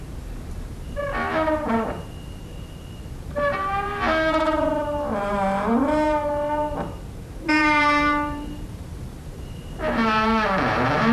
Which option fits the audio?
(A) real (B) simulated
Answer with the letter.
B